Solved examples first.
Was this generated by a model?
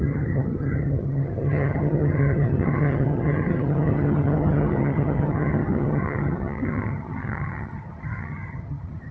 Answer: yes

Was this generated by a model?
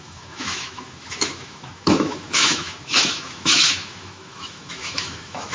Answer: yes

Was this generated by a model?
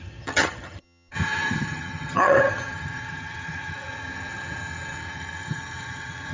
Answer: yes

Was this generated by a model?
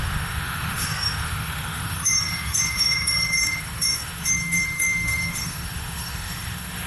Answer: yes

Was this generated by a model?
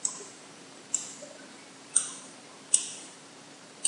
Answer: yes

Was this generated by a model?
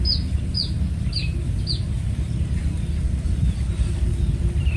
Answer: no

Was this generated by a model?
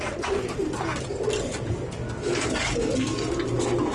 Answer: no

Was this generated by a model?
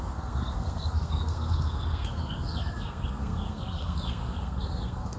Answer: yes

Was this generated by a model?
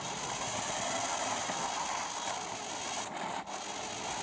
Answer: no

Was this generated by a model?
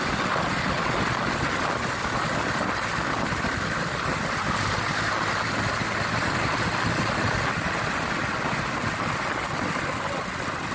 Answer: no